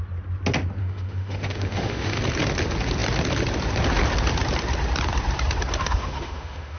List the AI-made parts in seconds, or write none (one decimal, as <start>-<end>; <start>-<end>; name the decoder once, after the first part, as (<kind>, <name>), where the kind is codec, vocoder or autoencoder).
0.8-2.2 (autoencoder, DAC-VAE); 5.8-6.8